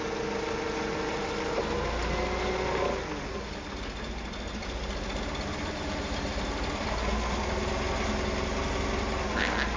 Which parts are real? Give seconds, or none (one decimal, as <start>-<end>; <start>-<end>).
0.0-9.8